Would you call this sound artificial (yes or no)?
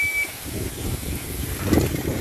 no